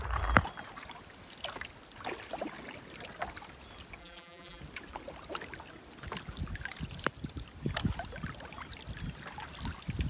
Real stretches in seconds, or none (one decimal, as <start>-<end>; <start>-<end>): 0.0-4.0; 4.6-10.1